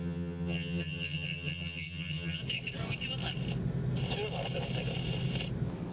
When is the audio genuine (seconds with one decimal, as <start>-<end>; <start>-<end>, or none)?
2.4-5.9